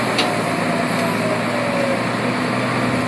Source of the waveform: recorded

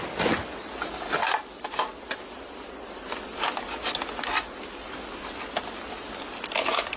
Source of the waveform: recorded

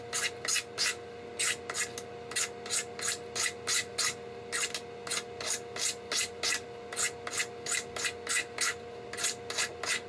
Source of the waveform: recorded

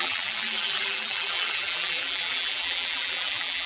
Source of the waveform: remade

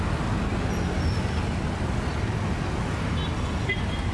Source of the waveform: recorded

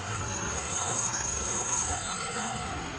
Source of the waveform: remade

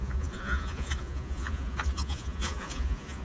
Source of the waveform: remade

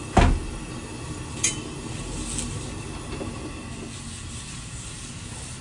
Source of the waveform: recorded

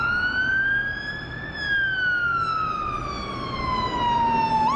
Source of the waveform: recorded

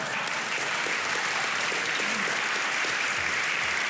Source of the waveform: remade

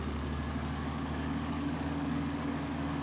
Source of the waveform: remade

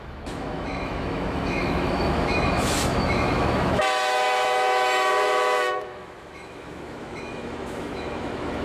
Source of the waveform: remade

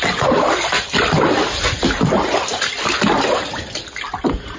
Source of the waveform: recorded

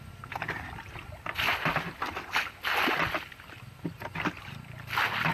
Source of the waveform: recorded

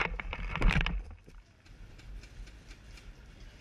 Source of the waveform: remade